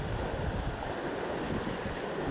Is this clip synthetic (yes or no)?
no